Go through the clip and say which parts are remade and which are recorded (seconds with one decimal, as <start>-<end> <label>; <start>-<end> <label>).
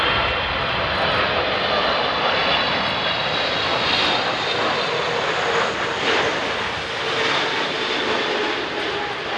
0.0-9.4 recorded